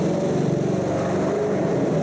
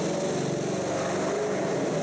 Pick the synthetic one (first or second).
first